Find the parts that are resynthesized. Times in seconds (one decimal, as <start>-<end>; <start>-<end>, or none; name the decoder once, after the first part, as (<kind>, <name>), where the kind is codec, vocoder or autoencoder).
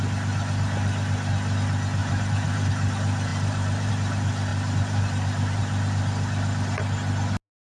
2.0-2.7 (vocoder, BigVGAN v2); 3.3-3.9; 4.5-5.6